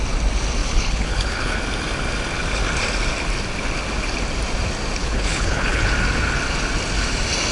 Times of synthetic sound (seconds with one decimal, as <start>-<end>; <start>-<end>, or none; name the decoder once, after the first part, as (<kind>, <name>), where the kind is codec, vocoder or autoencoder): 0.6-1.6 (codec, HILCodec); 5.0-5.9